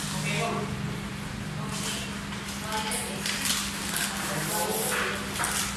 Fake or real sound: real